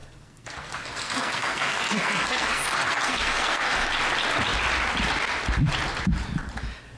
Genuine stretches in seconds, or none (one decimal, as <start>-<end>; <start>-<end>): 3.9-7.0